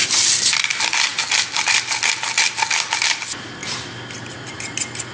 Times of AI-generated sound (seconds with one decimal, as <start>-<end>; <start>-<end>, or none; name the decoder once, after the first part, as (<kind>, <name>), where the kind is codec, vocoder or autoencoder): none